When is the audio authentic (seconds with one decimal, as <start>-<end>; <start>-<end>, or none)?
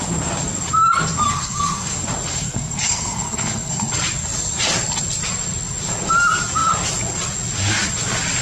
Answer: 0.0-1.3; 1.9-2.3; 3.9-8.4